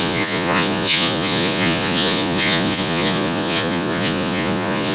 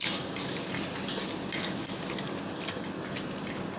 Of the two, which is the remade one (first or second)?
first